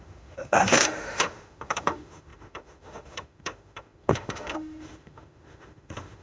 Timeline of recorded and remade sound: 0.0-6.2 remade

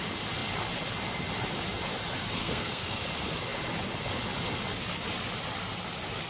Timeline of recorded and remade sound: 0.0-2.4 recorded; 2.4-3.0 remade; 3.0-6.3 recorded

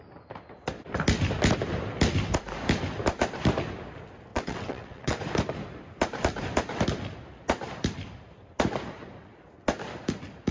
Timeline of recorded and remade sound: 0.0-4.3 recorded; 4.3-5.2 remade; 5.2-10.5 recorded

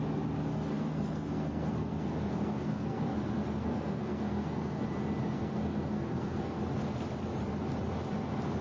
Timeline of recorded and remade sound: 0.0-0.5 recorded; 0.5-4.8 remade; 4.8-5.2 recorded; 5.2-6.6 remade; 6.6-8.6 recorded

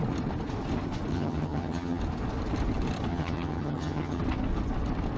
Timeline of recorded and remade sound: 0.0-1.1 recorded; 1.1-2.0 remade; 2.0-3.1 recorded; 3.1-4.2 remade; 4.2-5.2 recorded

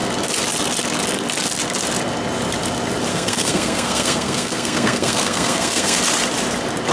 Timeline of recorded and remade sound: 0.0-3.1 recorded; 3.1-6.0 remade; 6.0-6.9 recorded

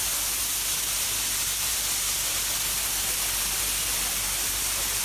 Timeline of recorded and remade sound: 0.0-5.0 recorded

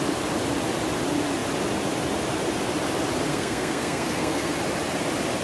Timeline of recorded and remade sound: 0.0-3.3 recorded; 3.3-4.5 remade; 4.5-5.4 recorded